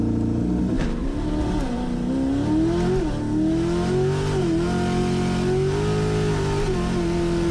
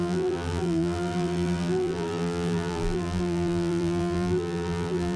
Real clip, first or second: first